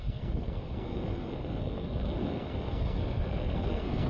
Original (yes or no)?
no